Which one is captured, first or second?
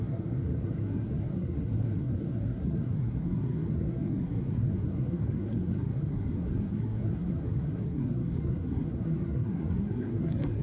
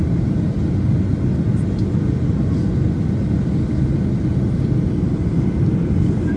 second